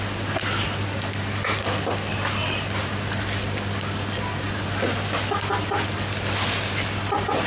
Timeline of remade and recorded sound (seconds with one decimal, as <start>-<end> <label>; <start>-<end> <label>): 0.0-7.5 recorded